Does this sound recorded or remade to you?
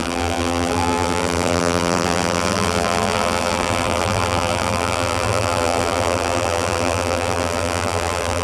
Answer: remade